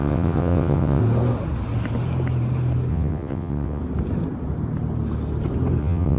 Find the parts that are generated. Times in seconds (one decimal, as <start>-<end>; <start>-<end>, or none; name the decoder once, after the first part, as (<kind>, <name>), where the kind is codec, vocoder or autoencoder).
0.0-1.0 (vocoder, WaveNeXt); 2.9-3.8; 5.8-6.2

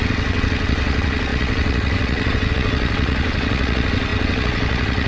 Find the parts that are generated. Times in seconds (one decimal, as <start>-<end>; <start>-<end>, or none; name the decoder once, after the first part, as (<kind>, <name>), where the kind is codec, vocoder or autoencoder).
0.0-5.1 (vocoder, WaveNeXt)

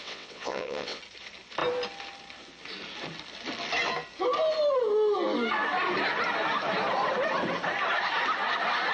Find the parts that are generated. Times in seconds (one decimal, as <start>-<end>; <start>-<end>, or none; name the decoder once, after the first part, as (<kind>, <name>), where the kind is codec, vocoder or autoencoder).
0.0-1.0 (vocoder, WaveNeXt)

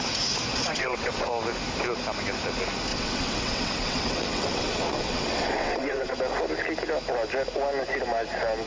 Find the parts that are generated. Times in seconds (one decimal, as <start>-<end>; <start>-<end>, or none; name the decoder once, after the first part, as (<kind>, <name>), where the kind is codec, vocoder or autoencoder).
0.5-1.3 (vocoder, WaveNeXt); 2.9-6.2

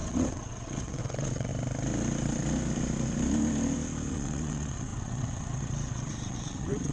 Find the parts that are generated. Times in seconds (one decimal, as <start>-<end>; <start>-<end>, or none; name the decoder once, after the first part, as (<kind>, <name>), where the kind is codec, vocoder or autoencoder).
0.0-1.5 (vocoder, WaveNeXt); 4.1-6.9

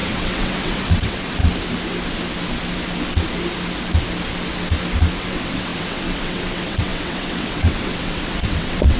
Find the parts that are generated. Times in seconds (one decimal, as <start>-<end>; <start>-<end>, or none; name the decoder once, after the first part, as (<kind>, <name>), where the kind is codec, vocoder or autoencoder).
0.0-1.4 (vocoder, WaveNeXt); 5.1-9.0

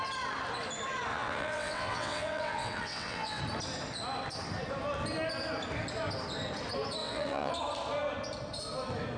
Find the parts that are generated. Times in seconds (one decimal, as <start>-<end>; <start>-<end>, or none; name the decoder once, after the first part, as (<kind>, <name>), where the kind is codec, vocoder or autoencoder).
1.1-3.4 (vocoder, WaveNeXt); 7.0-7.5